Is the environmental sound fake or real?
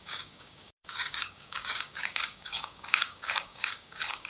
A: fake